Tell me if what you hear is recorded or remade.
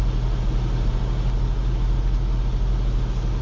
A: recorded